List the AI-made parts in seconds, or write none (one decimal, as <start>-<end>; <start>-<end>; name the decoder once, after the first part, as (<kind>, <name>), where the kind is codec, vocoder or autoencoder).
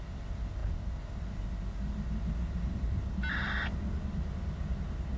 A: none